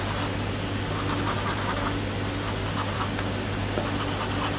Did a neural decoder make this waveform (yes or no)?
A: no